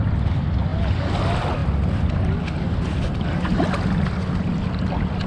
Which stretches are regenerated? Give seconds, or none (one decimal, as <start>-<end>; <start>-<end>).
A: none